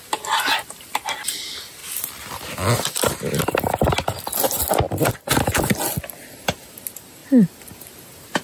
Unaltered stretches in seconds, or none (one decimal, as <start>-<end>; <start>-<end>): 1.8-6.0; 7.2-7.8